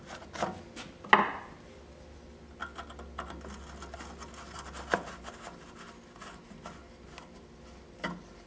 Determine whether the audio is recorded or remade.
recorded